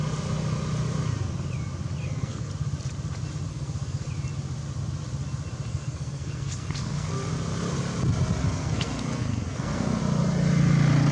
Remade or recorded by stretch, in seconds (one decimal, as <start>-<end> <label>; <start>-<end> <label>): 0.0-2.0 recorded; 2.0-2.5 remade; 2.5-3.5 recorded; 3.5-4.1 remade; 4.1-5.7 recorded; 5.7-7.3 remade; 7.3-8.4 recorded; 8.4-10.0 remade; 10.0-11.1 recorded